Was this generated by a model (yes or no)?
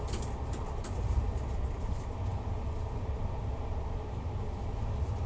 no